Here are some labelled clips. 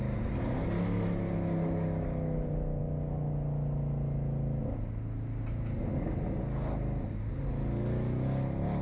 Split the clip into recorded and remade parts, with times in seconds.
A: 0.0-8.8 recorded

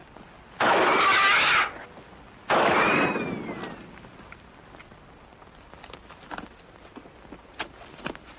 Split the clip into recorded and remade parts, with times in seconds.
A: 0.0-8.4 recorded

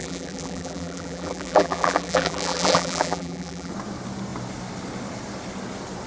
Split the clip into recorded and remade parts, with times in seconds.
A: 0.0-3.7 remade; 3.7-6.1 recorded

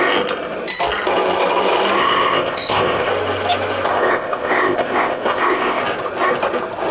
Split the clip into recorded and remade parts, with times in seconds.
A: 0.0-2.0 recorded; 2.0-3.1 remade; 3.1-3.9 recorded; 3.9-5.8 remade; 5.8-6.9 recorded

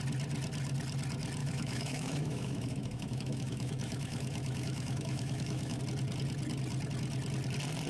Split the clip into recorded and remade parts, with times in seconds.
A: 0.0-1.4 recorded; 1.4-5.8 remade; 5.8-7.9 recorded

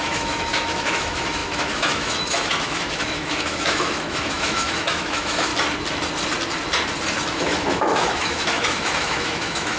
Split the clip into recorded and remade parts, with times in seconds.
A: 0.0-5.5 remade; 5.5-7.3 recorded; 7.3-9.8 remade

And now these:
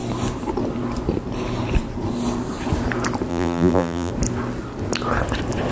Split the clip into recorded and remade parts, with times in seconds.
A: 0.0-3.3 recorded; 3.3-4.1 remade; 4.1-5.7 recorded

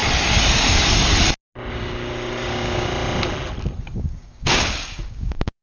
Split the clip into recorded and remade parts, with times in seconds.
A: 0.0-1.7 recorded; 1.7-2.9 remade; 2.9-3.8 recorded; 3.8-5.6 remade